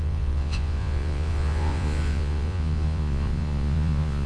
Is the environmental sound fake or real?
fake